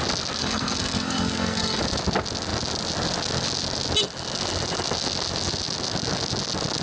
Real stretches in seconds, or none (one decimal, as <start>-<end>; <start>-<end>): 0.0-0.4; 1.8-6.8